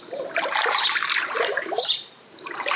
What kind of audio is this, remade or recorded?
remade